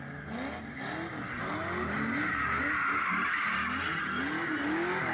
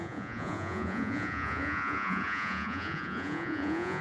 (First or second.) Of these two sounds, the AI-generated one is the second